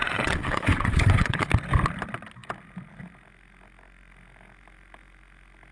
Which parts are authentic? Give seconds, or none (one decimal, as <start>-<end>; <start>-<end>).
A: 1.4-5.7

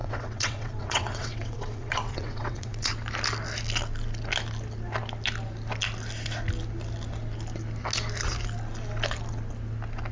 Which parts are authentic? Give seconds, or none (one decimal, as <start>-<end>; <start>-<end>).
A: 2.9-10.1

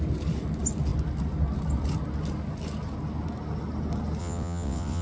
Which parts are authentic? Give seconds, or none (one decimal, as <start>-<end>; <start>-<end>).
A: 0.0-4.2

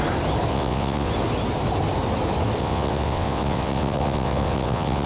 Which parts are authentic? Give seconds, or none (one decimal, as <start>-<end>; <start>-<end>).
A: 0.0-0.5; 1.1-2.6